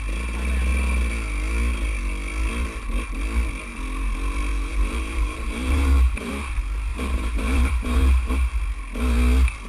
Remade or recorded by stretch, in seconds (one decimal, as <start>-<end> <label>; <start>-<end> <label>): 0.0-4.5 recorded; 4.5-6.3 remade; 6.3-6.9 recorded; 6.9-8.3 remade; 8.3-9.7 recorded